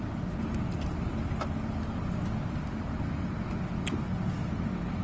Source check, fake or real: real